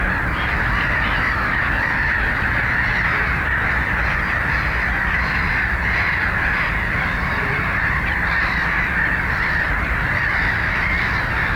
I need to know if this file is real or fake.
fake